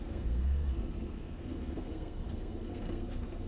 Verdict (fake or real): fake